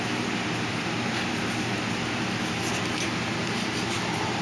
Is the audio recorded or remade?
recorded